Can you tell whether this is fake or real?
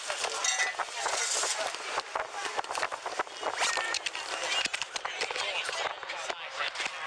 real